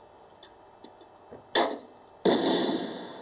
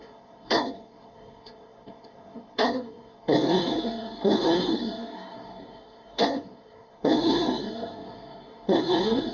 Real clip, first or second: first